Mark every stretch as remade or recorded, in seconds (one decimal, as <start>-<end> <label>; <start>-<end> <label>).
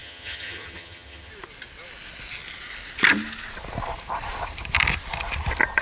0.0-1.3 remade; 1.3-5.8 recorded